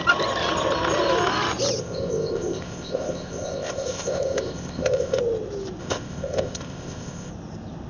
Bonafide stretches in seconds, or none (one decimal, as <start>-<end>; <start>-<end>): 0.0-1.8; 5.2-5.8; 7.3-7.9